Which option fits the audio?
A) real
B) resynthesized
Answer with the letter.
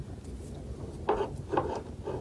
A